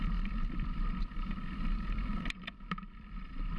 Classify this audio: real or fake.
fake